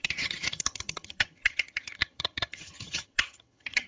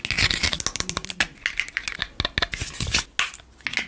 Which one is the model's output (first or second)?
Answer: first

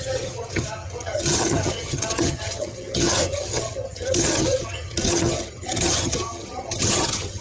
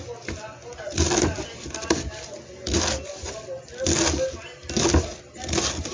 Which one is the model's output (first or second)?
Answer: first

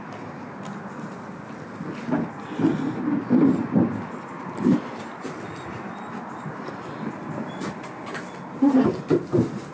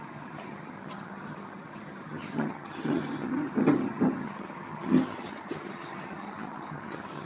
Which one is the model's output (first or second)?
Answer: second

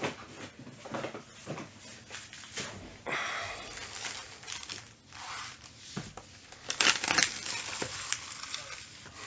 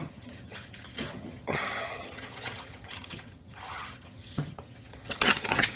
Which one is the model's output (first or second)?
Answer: second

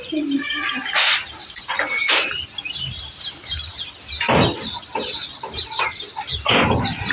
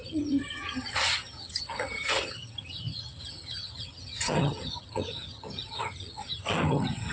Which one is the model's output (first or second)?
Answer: second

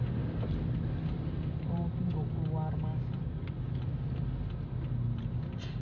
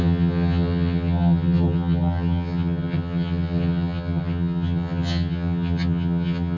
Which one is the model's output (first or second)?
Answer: second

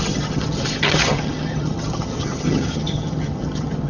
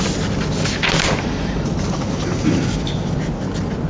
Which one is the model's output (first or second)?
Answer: first